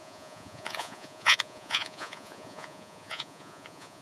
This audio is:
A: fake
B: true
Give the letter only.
A